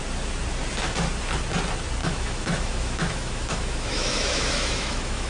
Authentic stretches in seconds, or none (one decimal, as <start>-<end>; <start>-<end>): 0.0-2.0